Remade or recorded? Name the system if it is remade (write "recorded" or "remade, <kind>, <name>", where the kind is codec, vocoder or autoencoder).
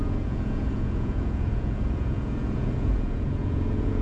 remade, vocoder, Vocos